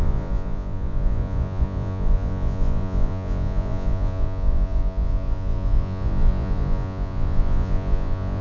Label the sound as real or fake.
fake